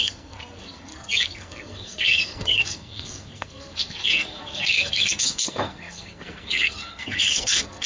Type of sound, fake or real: fake